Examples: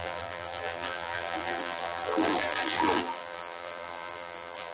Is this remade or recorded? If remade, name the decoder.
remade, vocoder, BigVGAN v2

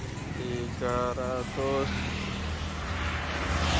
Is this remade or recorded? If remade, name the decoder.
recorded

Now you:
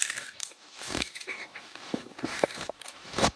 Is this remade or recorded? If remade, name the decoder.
remade, codec, DAC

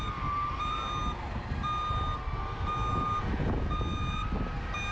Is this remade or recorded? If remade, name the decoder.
recorded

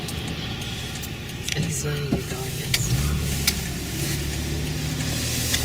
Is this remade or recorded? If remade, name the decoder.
recorded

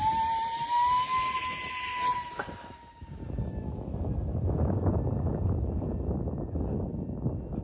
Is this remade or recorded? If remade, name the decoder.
recorded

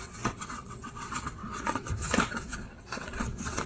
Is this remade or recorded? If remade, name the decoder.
remade, vocoder, WaveNeXt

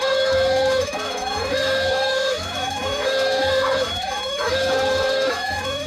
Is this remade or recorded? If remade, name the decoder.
remade, autoencoder, DAC-VAE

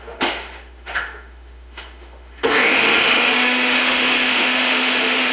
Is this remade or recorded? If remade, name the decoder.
remade, autoencoder, DAC-VAE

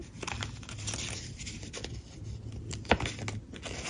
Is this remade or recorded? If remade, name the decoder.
recorded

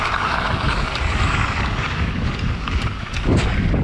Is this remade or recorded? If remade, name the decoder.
remade, codec, DAC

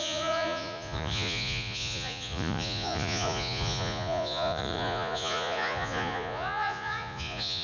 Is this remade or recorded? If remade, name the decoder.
remade, vocoder, Vocos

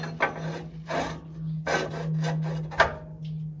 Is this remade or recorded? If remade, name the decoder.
recorded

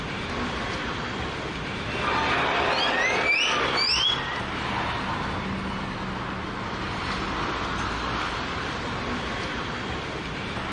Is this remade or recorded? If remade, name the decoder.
recorded